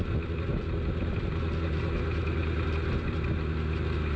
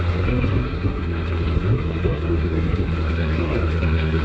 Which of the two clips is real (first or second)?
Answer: first